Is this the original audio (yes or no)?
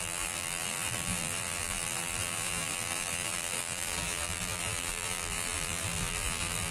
no